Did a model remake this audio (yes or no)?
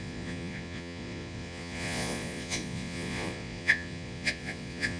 yes